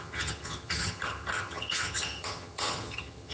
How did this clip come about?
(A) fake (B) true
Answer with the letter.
A